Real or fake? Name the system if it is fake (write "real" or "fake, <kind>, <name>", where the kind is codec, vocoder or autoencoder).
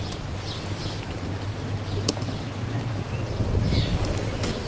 real